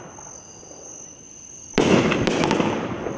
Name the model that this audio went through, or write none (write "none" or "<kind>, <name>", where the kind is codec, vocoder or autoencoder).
none